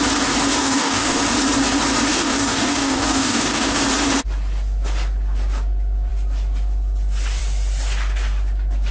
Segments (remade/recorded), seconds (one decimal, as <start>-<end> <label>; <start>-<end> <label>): 0.0-0.6 recorded; 0.6-1.2 remade; 1.2-2.1 recorded; 2.1-3.8 remade; 3.8-8.9 recorded